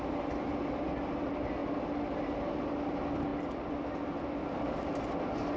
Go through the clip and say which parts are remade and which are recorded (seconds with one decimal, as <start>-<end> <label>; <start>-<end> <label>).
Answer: 0.0-5.6 recorded